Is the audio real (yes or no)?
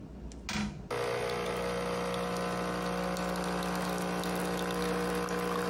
yes